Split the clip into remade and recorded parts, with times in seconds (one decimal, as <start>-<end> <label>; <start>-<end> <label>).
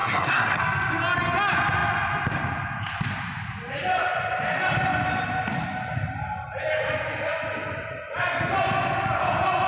0.0-0.6 remade; 0.6-9.7 recorded